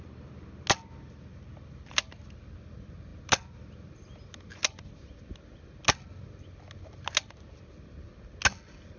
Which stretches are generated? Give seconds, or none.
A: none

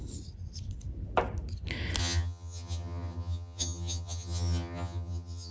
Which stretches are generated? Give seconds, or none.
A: 2.0-5.5 (vocoder, HiFi-GAN)

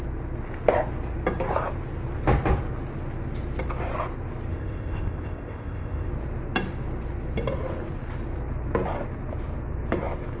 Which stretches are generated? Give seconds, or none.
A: 4.5-6.1 (codec, ZipCodec)

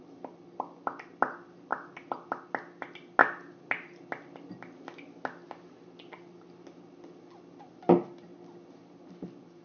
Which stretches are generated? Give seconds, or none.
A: none

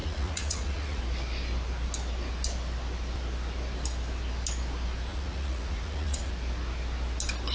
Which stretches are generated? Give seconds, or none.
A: 0.0-1.0 (vocoder, Vocos); 5.1-6.3